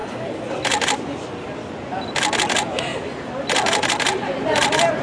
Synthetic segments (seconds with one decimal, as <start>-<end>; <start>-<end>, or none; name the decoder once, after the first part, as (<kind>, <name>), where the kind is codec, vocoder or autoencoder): 0.0-1.7 (vocoder, BigVGAN v2); 2.9-5.0